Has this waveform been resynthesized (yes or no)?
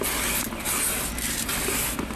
no